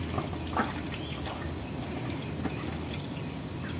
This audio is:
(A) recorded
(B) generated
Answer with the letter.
A